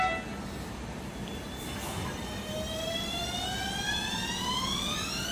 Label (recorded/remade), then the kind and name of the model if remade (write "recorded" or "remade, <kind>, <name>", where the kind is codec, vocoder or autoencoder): recorded